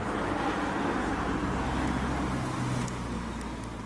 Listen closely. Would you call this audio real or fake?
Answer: real